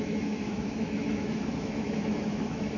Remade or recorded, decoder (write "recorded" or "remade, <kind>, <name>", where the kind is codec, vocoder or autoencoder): remade, autoencoder, DAC-VAE